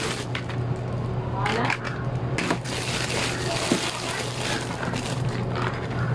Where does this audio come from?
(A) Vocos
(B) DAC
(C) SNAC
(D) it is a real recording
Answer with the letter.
D